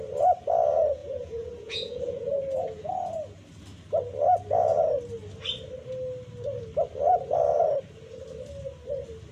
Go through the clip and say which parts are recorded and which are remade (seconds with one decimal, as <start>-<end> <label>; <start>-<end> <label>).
0.0-1.0 recorded; 1.0-2.9 remade; 2.9-9.3 recorded